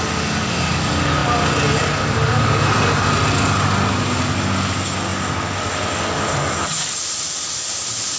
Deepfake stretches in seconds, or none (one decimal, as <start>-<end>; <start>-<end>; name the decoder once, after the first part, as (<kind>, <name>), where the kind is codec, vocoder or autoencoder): none